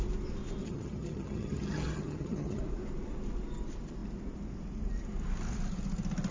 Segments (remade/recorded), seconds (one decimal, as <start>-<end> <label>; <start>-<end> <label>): 0.0-0.6 recorded; 0.6-2.6 remade; 2.6-6.3 recorded

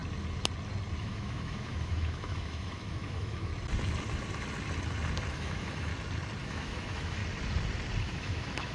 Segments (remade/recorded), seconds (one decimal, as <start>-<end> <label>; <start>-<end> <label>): 0.0-1.0 recorded; 1.0-3.5 remade; 3.5-5.3 recorded; 5.3-5.9 remade; 5.9-6.4 recorded; 6.4-7.2 remade; 7.2-8.0 recorded; 8.0-8.7 remade